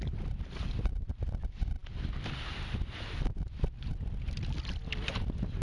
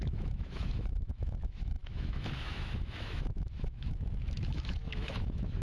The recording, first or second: first